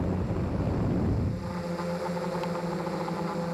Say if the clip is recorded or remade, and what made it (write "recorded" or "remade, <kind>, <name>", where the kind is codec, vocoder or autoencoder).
recorded